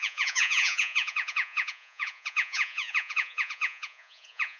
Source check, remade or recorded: remade